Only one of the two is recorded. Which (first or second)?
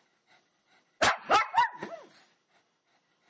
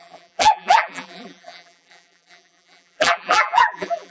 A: first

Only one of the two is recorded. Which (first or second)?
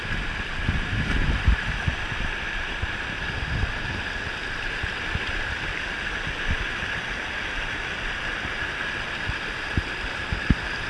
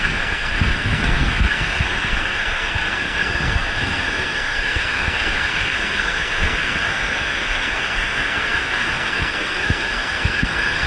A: first